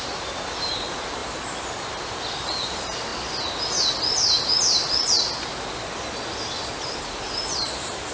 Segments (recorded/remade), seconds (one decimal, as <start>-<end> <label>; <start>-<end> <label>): 0.0-3.1 remade; 3.1-7.2 recorded; 7.2-8.1 remade